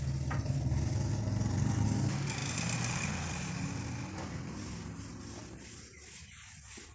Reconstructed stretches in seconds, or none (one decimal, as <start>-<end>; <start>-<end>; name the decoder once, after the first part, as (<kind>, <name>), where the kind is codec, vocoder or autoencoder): none